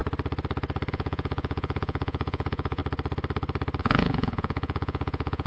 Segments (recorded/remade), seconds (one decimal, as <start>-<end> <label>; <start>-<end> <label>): 0.0-0.9 recorded; 0.9-2.8 remade; 2.8-3.8 recorded; 3.8-5.5 remade